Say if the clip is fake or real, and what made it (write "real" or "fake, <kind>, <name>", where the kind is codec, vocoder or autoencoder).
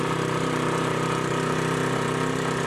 real